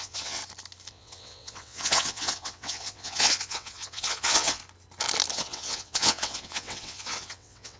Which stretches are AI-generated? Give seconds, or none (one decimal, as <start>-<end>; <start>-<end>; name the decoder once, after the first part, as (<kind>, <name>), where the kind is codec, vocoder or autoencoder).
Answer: 0.0-0.4 (vocoder, WaveNeXt); 0.9-4.6; 5.3-7.8